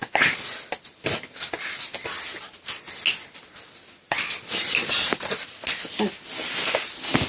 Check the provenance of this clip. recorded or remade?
recorded